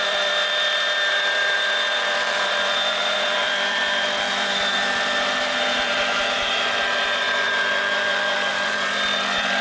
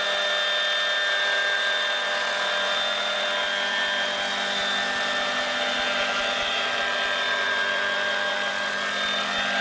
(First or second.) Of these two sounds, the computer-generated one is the first